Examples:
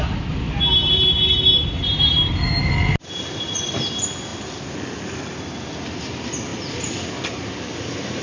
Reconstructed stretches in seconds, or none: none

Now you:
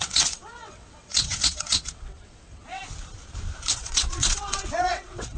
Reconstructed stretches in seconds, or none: 0.0-2.8 (vocoder, WaveNeXt); 3.7-5.4

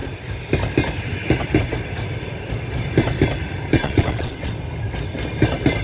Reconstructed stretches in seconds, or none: 3.8-4.5 (vocoder, WaveNeXt)

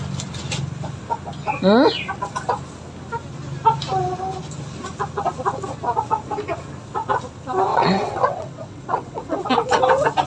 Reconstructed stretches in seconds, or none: 7.7-9.8 (vocoder, WaveNeXt)

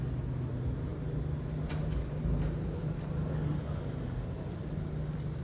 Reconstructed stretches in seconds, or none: none

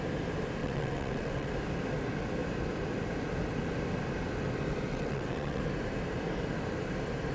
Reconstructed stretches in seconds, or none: 0.6-1.5 (vocoder, WaveNeXt); 4.9-5.6

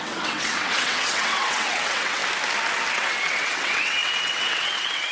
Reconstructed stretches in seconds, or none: 0.0-2.2 (vocoder, WaveNeXt); 2.9-5.1

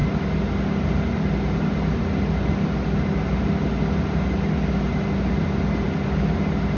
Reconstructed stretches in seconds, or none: none